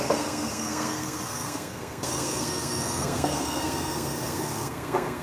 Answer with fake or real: fake